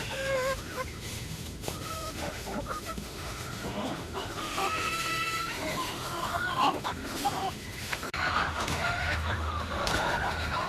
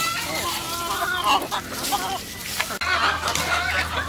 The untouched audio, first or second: second